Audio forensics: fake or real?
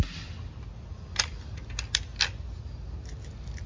real